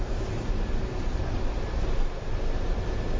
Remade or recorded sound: recorded